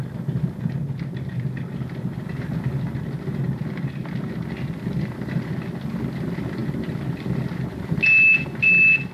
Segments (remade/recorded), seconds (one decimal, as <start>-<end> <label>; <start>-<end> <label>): 0.0-9.1 recorded